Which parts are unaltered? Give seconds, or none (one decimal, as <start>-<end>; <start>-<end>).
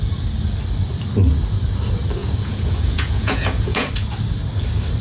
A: 0.0-2.2; 3.9-5.0